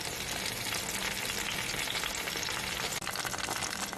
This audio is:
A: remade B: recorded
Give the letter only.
B